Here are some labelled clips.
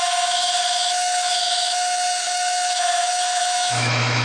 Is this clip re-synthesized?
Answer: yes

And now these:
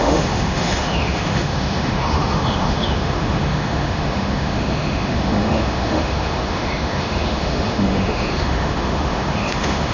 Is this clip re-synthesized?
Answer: yes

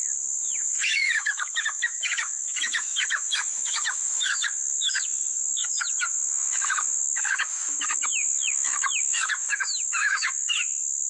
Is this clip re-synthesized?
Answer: yes